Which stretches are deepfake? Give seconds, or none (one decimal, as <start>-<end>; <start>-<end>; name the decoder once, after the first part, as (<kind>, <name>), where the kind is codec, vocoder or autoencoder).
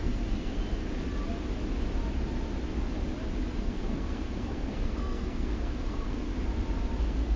0.0-0.6 (codec, SNAC); 3.6-6.3; 7.0-7.4